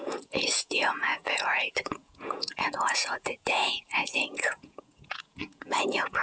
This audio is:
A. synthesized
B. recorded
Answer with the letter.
A